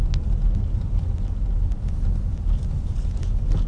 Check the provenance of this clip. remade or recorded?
recorded